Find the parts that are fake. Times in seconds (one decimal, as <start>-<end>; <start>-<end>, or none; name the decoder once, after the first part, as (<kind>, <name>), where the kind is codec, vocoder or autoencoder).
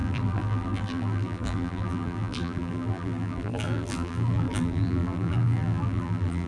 0.0-6.5 (vocoder, BigVGAN v2)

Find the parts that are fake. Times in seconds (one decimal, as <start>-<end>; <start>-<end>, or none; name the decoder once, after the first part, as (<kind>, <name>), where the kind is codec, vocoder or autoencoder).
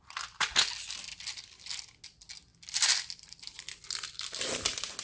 2.5-4.3 (vocoder, BigVGAN v2)